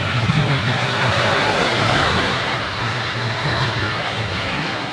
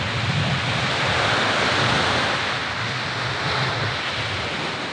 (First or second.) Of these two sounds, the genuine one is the second